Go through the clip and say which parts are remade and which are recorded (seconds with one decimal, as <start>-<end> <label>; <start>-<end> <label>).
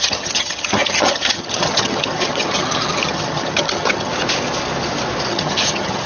0.0-4.1 remade; 4.1-5.3 recorded; 5.3-6.1 remade